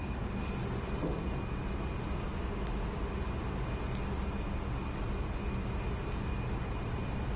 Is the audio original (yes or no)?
yes